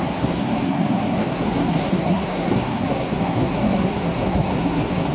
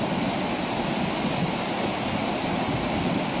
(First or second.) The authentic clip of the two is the second